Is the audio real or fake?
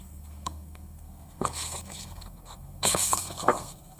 fake